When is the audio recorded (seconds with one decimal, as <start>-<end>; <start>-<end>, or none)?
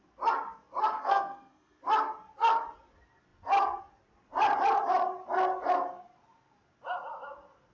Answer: 0.0-0.9; 1.8-7.7